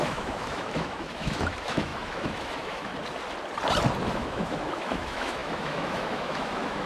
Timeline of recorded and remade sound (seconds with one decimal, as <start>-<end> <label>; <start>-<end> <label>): 0.0-2.9 remade; 2.9-4.1 recorded; 4.1-6.9 remade